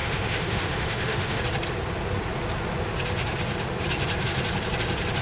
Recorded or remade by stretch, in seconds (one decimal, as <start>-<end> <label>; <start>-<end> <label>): 0.0-1.4 remade; 1.4-5.2 recorded